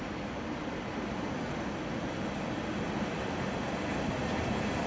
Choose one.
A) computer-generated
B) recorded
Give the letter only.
B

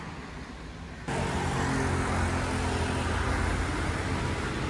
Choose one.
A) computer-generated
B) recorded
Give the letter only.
B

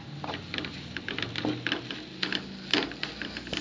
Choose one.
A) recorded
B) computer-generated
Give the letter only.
A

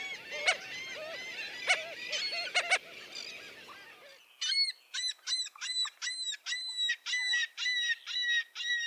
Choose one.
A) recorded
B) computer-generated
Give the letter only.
A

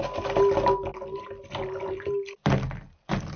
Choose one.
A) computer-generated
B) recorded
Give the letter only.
B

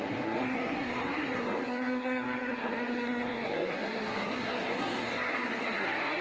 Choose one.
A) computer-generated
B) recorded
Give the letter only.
A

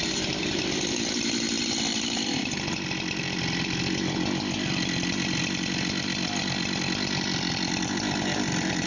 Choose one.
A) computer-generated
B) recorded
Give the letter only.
A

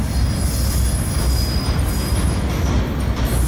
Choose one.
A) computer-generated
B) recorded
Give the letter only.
B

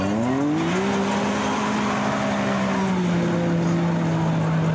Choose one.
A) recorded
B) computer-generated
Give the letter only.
A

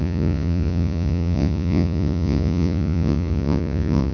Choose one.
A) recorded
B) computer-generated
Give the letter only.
B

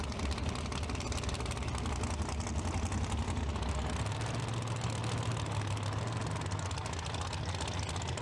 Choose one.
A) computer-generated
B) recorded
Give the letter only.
B